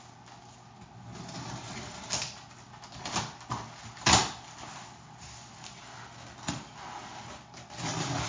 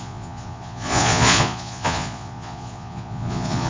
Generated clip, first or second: second